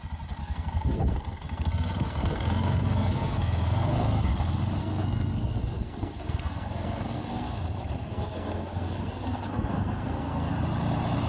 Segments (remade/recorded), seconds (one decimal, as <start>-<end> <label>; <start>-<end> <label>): 0.0-0.4 recorded; 0.4-4.3 remade; 4.3-4.8 recorded; 4.8-7.6 remade; 7.6-8.0 recorded; 8.0-10.5 remade; 10.5-11.3 recorded